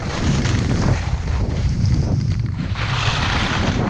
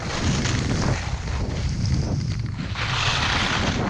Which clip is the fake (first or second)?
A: first